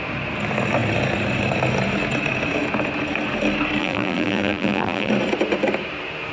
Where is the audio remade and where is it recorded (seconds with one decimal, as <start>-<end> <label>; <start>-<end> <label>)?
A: 0.0-3.8 recorded; 3.8-5.1 remade; 5.1-6.3 recorded